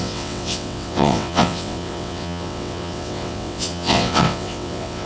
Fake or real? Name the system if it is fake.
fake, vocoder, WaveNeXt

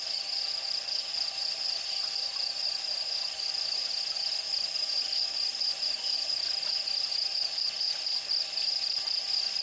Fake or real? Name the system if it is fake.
real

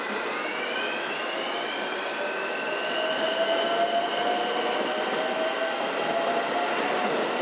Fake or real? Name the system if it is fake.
real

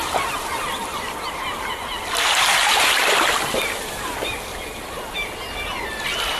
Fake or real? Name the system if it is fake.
real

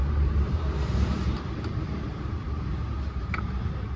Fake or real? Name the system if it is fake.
fake, vocoder, BigVGAN v2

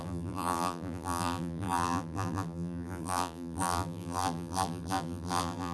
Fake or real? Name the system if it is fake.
fake, vocoder, BigVGAN v2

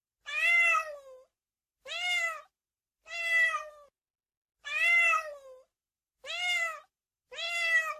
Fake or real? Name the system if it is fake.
real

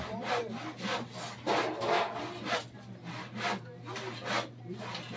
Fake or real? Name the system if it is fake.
real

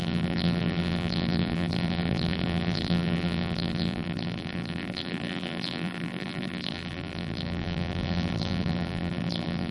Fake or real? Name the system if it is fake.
fake, vocoder, BigVGAN v2